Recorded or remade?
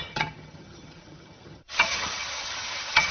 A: remade